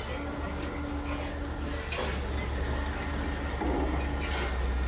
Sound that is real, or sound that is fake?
real